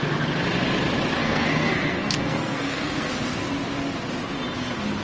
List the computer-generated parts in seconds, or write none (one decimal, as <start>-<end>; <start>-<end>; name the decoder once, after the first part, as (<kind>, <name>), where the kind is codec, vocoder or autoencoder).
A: 1.2-3.1 (codec, SNAC)